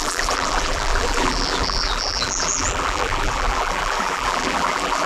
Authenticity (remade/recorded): remade